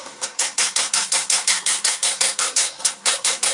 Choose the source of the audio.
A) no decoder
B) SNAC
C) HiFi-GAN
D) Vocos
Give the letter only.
B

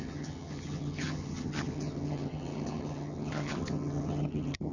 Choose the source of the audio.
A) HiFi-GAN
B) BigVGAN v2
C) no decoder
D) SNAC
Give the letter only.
A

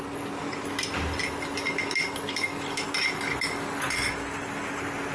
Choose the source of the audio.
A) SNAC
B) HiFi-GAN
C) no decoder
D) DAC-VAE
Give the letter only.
C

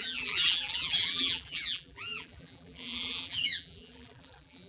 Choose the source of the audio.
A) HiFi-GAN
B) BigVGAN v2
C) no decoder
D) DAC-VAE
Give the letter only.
B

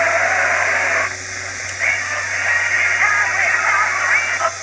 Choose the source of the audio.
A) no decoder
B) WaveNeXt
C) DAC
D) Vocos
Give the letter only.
A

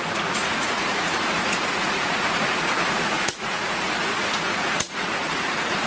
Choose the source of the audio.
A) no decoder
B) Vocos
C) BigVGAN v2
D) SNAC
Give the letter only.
B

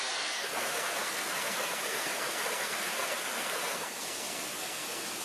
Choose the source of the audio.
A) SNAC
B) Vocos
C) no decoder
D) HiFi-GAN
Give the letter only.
A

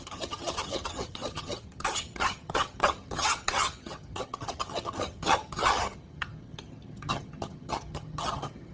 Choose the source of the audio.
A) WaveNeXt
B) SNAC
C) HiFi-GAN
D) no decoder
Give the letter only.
C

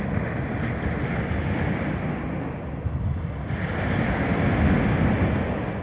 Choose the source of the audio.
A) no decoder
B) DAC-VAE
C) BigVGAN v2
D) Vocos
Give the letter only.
A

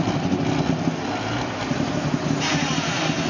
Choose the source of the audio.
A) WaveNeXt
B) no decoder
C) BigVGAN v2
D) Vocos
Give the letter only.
B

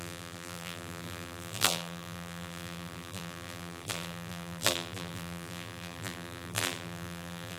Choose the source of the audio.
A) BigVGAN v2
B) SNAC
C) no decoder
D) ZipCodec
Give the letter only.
A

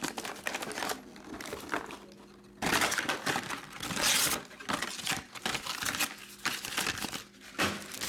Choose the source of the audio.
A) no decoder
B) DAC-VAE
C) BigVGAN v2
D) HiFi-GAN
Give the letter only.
A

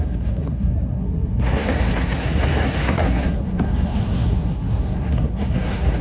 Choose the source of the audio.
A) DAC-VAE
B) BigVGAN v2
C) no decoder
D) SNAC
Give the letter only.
D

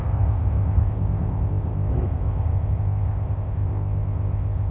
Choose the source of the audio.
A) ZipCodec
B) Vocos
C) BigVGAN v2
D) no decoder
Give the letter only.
A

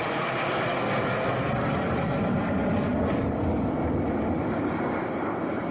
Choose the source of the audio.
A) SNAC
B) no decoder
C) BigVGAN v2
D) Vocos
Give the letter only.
C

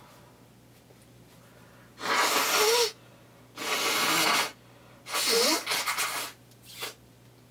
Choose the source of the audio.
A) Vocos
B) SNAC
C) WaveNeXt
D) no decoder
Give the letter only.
D